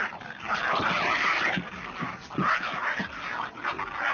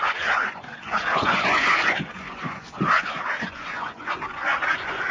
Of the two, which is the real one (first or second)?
first